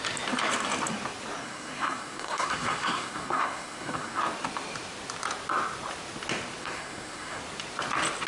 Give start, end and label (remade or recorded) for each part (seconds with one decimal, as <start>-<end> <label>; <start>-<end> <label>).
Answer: 0.0-1.4 recorded; 1.4-4.2 remade; 4.2-6.6 recorded; 6.6-7.4 remade; 7.4-8.3 recorded